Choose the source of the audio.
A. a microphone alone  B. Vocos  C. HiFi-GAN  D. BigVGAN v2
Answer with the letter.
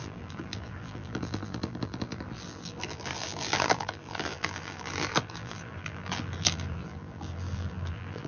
D